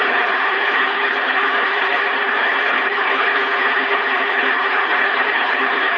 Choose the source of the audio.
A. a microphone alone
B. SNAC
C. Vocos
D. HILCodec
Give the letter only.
D